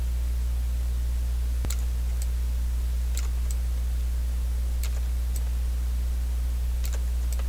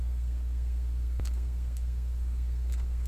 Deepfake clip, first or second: second